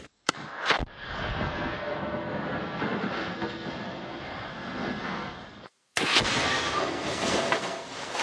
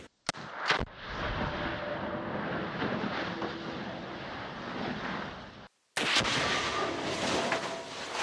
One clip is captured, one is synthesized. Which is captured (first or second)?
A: second